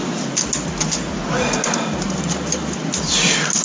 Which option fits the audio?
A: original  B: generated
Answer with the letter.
A